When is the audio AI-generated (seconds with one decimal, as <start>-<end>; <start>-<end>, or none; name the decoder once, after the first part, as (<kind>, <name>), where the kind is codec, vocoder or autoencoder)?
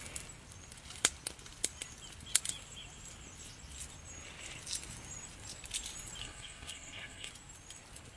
6.2-7.3 (codec, SNAC)